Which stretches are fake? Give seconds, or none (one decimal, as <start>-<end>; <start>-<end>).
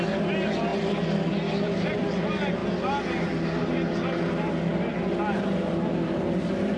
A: none